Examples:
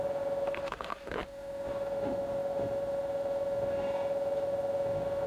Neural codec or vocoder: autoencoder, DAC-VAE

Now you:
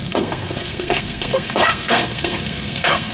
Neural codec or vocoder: codec, SNAC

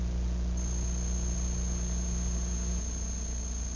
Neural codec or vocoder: none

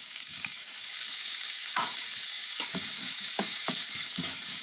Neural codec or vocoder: codec, DAC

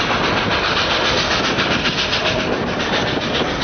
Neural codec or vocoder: none